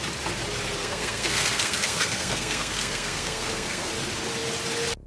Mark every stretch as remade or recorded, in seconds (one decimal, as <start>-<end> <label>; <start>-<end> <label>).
0.0-0.8 recorded; 0.8-3.9 remade; 3.9-5.1 recorded